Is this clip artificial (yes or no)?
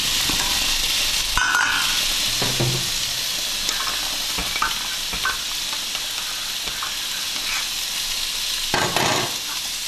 no